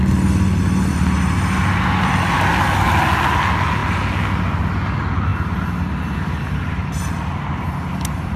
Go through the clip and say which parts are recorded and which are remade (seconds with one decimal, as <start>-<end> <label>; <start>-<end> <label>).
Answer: 0.0-8.4 recorded